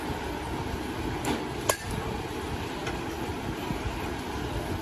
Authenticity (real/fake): real